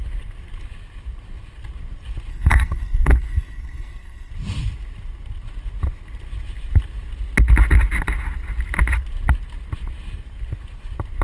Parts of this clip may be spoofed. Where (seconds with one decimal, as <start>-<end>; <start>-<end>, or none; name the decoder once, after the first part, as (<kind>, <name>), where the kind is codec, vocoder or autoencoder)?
2.3-4.3 (codec, SNAC)